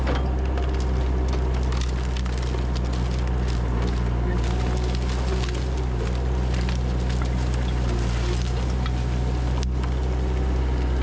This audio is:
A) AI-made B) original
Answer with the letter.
B